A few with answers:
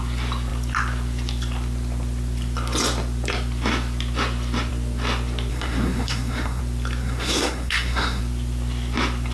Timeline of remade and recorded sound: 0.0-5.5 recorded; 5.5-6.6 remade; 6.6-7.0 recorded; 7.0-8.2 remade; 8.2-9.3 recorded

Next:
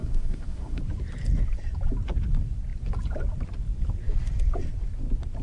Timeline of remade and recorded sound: 0.0-0.8 remade; 0.8-5.4 recorded